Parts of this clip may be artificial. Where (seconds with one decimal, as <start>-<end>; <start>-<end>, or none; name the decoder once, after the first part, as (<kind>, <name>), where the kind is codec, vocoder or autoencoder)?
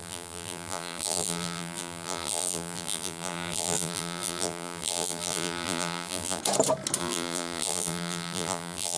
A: 0.0-6.4 (vocoder, BigVGAN v2); 7.0-9.0